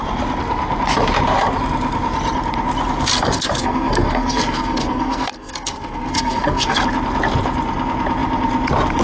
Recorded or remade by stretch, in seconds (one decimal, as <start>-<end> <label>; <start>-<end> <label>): 0.0-3.1 recorded; 3.1-6.8 remade; 6.8-9.0 recorded